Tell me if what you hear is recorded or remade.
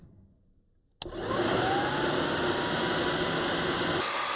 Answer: recorded